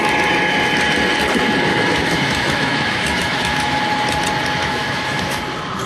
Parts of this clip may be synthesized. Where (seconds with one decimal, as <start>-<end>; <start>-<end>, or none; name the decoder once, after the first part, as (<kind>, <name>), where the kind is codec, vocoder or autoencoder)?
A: 1.7-3.8 (autoencoder, DAC-VAE); 4.6-5.4